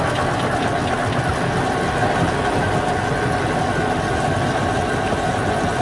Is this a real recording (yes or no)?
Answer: yes